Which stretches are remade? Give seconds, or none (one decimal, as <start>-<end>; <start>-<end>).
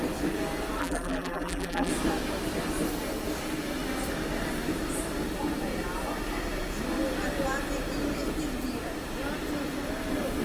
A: 0.8-1.9